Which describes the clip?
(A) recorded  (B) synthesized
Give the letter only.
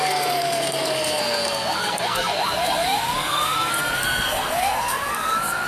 B